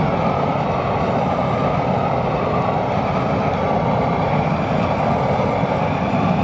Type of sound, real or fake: real